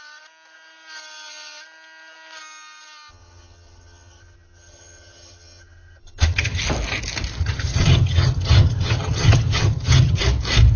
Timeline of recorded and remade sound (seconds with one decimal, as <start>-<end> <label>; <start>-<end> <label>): 0.0-3.1 recorded; 3.1-6.6 remade; 6.6-7.4 recorded; 7.4-10.2 remade; 10.2-10.8 recorded